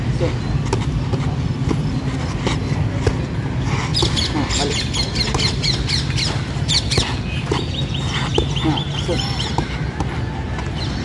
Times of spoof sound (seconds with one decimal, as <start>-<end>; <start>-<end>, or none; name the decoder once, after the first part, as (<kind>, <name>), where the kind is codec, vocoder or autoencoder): none